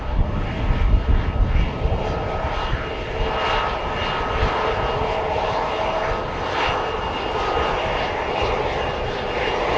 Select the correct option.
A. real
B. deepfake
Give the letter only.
A